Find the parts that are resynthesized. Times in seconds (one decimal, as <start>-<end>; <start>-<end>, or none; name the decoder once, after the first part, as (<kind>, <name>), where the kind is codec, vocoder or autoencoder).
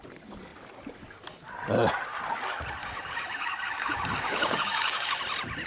2.8-5.2 (codec, DAC)